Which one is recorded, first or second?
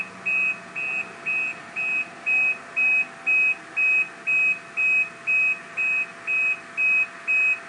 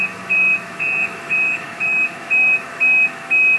first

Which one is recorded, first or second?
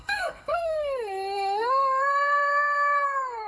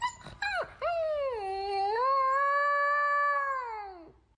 second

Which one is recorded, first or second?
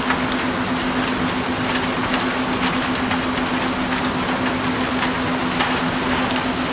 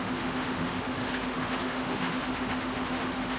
first